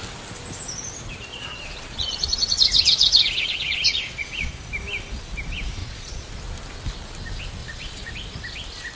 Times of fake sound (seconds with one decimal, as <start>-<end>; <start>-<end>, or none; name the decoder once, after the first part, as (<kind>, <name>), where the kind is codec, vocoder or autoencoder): 1.3-4.5 (vocoder, Vocos); 5.8-6.3; 7.6-8.1